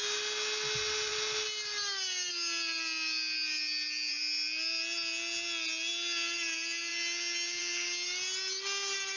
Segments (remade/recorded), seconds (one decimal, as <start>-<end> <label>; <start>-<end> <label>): 0.0-9.2 recorded